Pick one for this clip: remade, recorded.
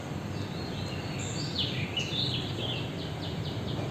recorded